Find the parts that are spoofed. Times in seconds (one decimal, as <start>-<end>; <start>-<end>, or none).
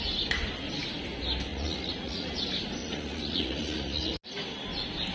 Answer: 1.5-2.3; 2.8-4.2